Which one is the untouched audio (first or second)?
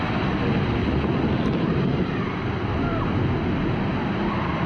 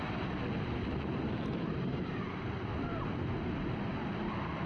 first